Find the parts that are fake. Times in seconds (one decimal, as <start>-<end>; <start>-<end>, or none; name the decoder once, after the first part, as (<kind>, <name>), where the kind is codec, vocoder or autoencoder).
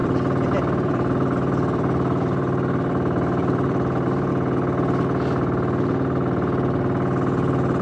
0.0-4.3 (vocoder, BigVGAN v2)